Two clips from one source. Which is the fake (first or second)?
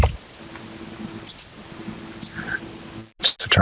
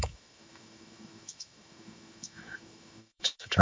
second